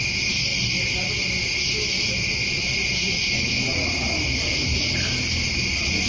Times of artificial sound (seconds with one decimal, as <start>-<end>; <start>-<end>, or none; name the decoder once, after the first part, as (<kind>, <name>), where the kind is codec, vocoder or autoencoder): none

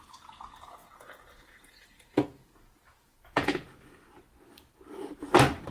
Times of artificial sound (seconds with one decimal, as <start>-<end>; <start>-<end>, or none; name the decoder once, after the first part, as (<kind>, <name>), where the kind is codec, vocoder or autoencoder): 0.8-3.7 (vocoder, Vocos)